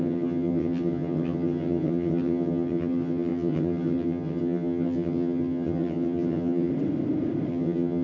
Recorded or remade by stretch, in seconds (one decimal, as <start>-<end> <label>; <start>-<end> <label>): 0.0-6.7 remade; 6.7-7.5 recorded; 7.5-8.0 remade